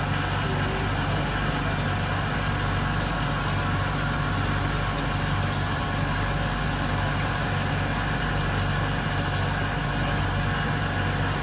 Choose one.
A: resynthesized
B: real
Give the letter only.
B